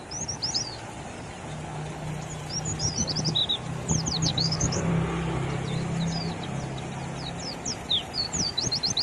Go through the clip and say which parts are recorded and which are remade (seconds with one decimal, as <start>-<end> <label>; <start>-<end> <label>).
0.0-4.3 recorded; 4.3-4.9 remade; 4.9-9.0 recorded